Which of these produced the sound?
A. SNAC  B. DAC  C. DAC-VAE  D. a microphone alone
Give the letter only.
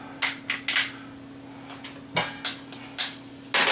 D